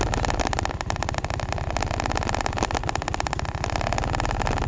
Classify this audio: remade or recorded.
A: recorded